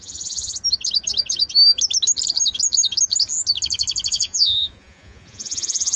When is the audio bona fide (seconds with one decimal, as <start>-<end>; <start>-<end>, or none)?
0.5-4.1